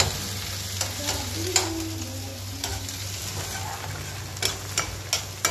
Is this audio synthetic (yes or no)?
no